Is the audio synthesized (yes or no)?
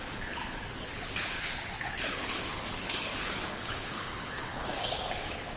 yes